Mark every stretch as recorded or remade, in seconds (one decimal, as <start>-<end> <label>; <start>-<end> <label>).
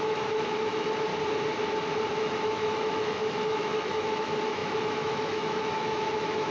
0.0-1.1 remade; 1.1-2.1 recorded; 2.1-6.5 remade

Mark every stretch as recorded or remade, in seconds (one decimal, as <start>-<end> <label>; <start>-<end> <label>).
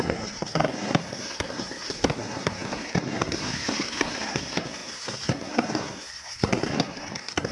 0.0-7.5 remade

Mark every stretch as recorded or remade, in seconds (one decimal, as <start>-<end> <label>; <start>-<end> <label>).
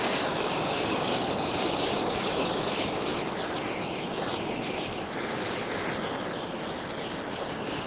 0.0-3.1 remade; 3.1-7.5 recorded; 7.5-7.9 remade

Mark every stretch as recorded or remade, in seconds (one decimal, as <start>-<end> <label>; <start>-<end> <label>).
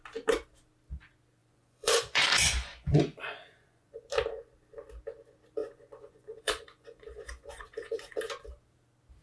0.0-1.4 recorded; 1.4-4.0 remade; 4.0-5.6 recorded; 5.6-8.2 remade; 8.2-9.2 recorded